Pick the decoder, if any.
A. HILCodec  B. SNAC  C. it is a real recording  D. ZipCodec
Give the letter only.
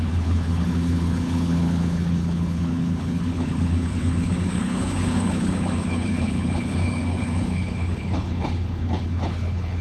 A